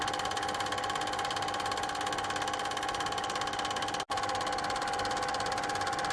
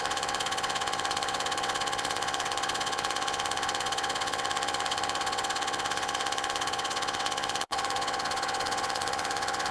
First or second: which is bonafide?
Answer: first